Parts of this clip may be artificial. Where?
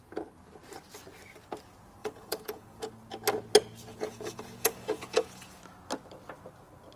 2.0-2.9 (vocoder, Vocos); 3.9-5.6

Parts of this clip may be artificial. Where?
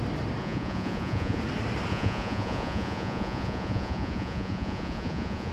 0.4-1.4 (vocoder, Vocos); 1.9-5.5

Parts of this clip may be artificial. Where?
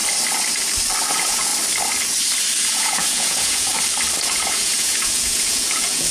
1.1-1.5 (vocoder, Vocos); 2.7-3.7; 4.2-6.1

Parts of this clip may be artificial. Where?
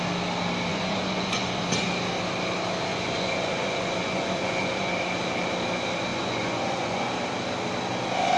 0.7-1.6 (vocoder, Vocos); 2.9-4.9; 6.1-7.1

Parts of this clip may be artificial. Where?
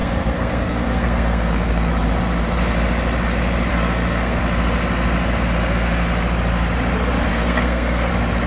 0.0-1.9 (codec, SNAC); 3.7-4.4; 7.3-8.1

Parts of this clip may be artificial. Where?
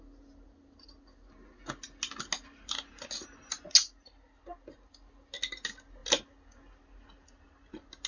none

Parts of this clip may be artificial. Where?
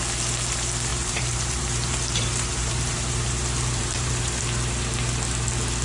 0.9-4.4 (vocoder, BigVGAN v2)